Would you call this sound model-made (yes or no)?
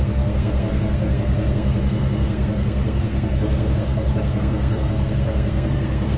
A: yes